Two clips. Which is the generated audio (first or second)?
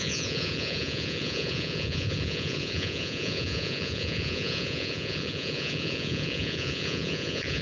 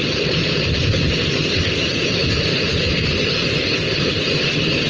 first